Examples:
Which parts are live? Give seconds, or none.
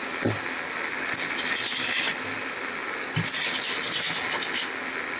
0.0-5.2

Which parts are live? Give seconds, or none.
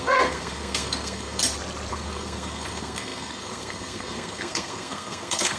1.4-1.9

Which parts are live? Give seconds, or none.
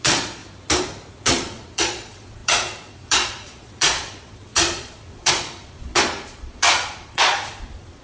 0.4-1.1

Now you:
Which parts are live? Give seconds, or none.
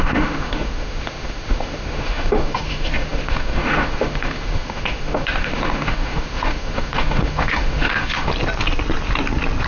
8.3-9.7